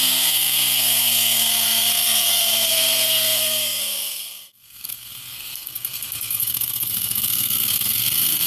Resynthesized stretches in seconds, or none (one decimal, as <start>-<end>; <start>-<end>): 0.0-8.5